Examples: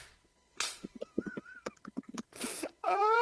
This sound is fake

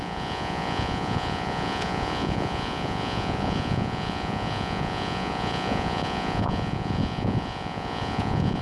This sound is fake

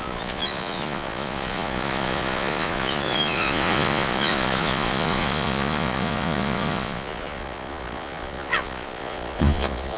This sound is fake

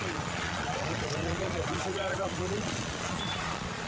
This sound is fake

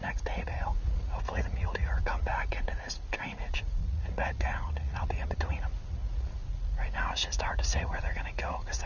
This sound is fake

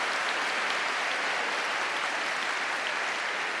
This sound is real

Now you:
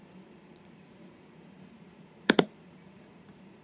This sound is fake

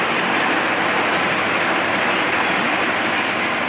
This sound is real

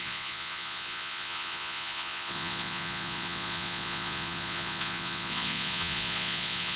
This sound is fake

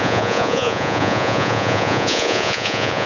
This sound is fake